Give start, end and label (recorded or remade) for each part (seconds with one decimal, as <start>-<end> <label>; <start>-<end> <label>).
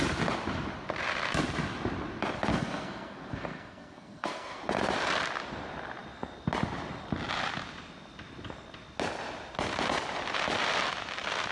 0.0-2.5 recorded; 2.5-4.6 remade; 4.6-11.5 recorded